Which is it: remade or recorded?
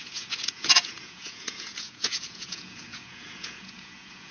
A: remade